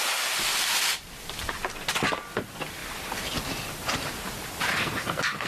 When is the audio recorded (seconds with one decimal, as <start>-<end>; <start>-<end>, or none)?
0.0-4.7